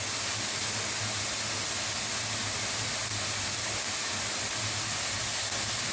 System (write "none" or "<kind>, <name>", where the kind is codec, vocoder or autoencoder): none